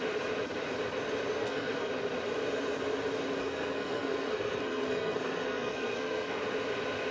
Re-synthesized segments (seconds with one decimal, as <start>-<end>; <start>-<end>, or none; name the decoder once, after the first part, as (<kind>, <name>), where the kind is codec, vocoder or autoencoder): 1.4-1.9 (codec, SNAC); 3.4-6.4